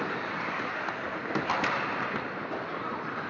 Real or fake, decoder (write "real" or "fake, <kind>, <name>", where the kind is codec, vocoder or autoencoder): real